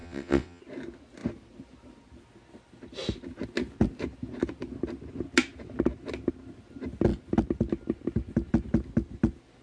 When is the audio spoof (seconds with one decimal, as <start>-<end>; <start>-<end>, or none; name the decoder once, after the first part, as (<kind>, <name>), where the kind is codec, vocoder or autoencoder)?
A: 0.0-0.6 (vocoder, WaveNeXt)